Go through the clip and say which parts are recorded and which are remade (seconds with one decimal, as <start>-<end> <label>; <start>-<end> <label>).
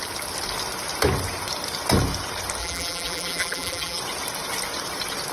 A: 0.0-2.6 recorded; 2.6-4.0 remade; 4.0-5.3 recorded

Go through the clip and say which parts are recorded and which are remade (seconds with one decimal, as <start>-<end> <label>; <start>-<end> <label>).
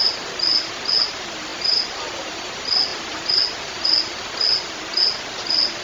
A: 0.0-1.5 recorded; 1.5-2.4 remade; 2.4-5.8 recorded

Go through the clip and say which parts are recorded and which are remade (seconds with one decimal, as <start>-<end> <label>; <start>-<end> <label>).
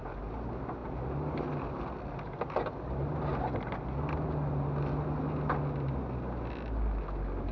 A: 0.0-7.5 recorded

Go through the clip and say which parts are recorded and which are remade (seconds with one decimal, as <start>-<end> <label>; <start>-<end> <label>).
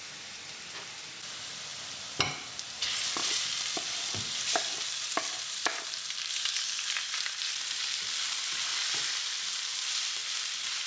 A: 0.0-3.2 recorded; 3.2-7.8 remade; 7.8-8.7 recorded; 8.7-10.1 remade; 10.1-10.9 recorded